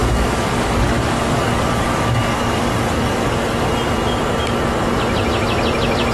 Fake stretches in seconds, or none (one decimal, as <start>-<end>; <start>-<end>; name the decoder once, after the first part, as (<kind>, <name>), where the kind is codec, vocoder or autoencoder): 0.0-3.7 (codec, DAC)